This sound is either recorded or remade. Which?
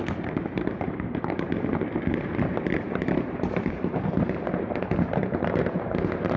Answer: remade